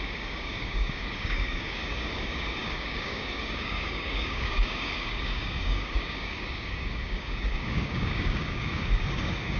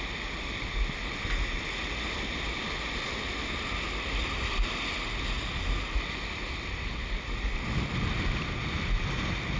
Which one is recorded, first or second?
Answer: second